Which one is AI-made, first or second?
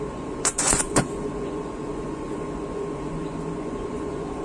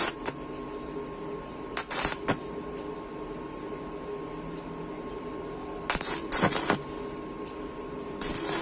first